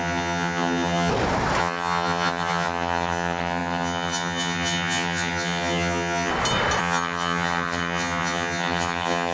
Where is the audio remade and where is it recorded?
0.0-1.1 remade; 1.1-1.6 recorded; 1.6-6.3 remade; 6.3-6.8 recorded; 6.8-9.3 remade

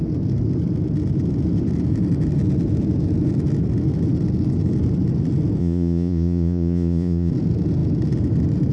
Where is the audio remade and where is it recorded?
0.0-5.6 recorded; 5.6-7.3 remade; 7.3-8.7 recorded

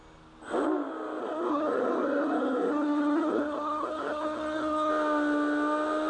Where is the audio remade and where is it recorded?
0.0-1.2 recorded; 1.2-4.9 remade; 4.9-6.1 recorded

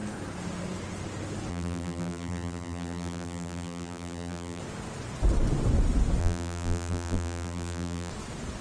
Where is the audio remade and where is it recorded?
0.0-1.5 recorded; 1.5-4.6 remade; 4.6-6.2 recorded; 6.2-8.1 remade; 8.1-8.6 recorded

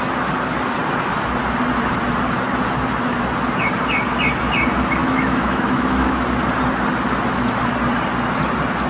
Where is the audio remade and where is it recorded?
0.0-5.0 recorded; 5.0-6.2 remade; 6.2-8.9 recorded

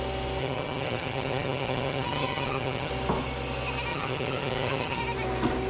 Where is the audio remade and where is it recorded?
0.0-0.4 recorded; 0.4-2.9 remade; 2.9-3.9 recorded; 3.9-5.0 remade; 5.0-5.7 recorded

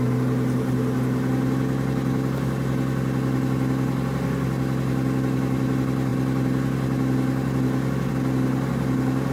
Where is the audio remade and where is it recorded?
0.0-9.3 recorded